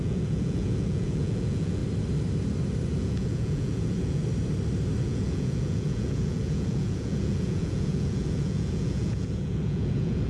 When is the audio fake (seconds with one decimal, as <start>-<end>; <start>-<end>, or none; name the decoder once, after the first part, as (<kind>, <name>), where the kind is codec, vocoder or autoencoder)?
0.0-1.8 (vocoder, Vocos); 3.0-4.2; 5.0-10.3